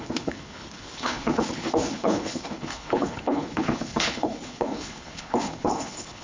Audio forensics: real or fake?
fake